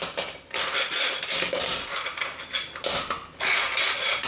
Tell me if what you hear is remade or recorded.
recorded